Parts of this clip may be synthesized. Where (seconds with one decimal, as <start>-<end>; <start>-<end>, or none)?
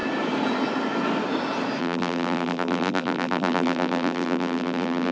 1.8-5.1